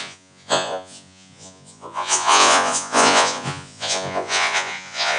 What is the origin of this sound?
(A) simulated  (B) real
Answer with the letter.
A